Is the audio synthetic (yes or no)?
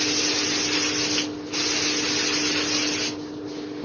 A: no